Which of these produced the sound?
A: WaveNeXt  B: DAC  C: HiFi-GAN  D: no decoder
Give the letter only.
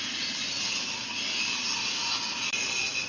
D